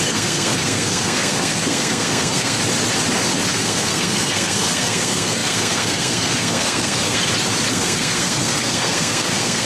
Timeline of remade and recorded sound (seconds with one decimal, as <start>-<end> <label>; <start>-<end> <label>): 0.0-2.6 remade; 2.6-3.5 recorded; 3.5-7.2 remade; 7.2-7.7 recorded; 7.7-9.7 remade